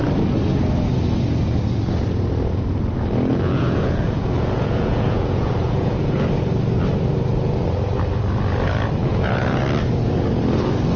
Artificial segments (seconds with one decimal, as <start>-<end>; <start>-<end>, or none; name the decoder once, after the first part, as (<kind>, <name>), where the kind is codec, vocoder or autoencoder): 3.3-6.3 (vocoder, Vocos); 9.0-9.6